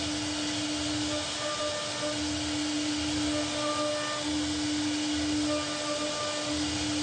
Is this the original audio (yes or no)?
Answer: yes